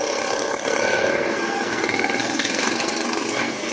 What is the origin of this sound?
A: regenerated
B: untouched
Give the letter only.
A